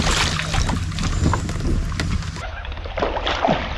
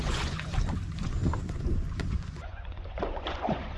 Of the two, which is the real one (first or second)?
first